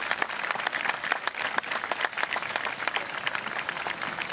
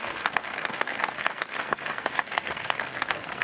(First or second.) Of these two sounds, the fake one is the second